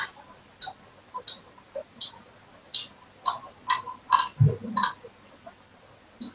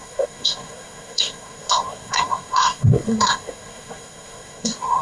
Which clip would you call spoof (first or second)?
second